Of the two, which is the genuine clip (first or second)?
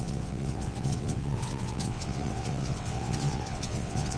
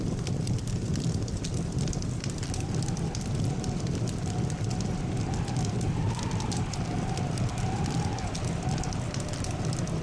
second